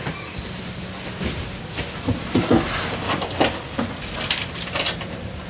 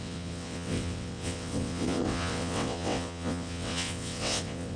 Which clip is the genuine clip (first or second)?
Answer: first